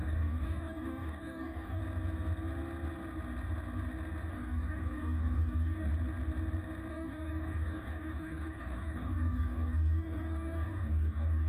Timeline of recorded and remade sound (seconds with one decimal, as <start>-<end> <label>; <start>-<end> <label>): 0.0-1.8 remade; 1.8-4.3 recorded; 4.3-5.9 remade; 5.9-6.9 recorded; 6.9-11.5 remade